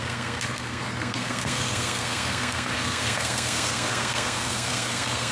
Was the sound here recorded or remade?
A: remade